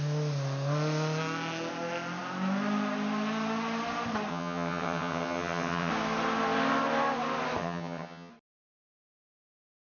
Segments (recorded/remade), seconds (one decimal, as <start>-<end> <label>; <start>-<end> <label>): 0.0-4.3 recorded; 4.3-5.9 remade; 5.9-7.6 recorded; 7.6-8.3 remade; 8.3-10.0 recorded